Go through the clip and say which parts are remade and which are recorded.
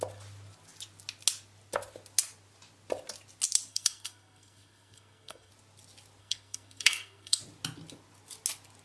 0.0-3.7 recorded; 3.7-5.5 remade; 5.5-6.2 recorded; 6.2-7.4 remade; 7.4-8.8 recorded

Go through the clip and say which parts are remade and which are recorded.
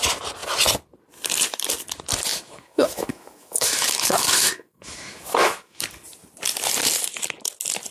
0.0-2.3 recorded; 2.3-5.8 remade; 5.8-7.9 recorded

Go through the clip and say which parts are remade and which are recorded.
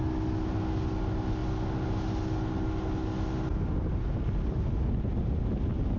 0.0-6.0 recorded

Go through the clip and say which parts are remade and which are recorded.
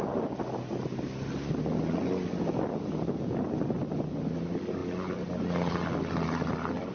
0.0-6.9 recorded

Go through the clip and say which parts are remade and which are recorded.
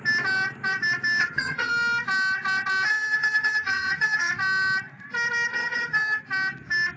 0.0-1.2 recorded; 1.2-1.7 remade; 1.7-2.9 recorded; 2.9-4.3 remade; 4.3-5.5 recorded; 5.5-6.2 remade; 6.2-7.0 recorded